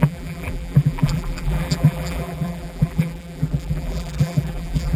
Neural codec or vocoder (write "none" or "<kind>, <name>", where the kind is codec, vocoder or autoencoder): vocoder, BigVGAN v2